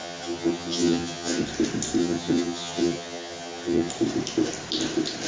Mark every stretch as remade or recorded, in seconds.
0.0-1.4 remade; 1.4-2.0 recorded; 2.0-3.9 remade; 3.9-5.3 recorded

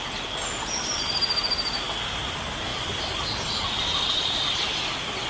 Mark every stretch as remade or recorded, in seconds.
0.0-5.3 recorded

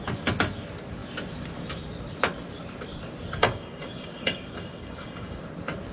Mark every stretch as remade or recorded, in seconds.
0.0-3.4 recorded; 3.4-5.4 remade; 5.4-5.9 recorded